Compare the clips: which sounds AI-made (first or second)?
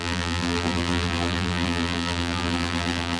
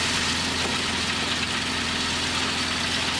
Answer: first